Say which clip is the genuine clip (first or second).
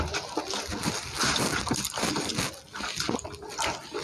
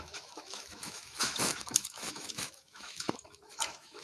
first